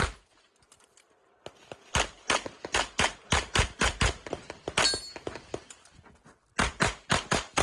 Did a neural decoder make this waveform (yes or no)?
no